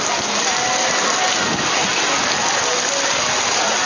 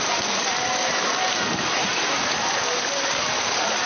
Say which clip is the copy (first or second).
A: second